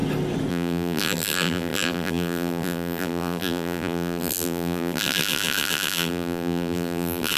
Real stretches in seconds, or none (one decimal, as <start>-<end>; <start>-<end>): 0.0-0.5